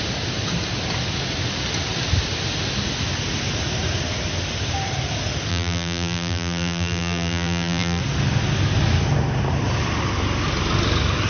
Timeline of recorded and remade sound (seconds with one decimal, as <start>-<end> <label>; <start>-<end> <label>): 0.0-5.5 recorded; 5.5-8.0 remade; 8.0-11.3 recorded